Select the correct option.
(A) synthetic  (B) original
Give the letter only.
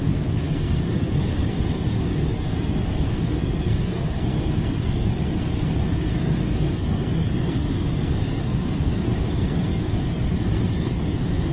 A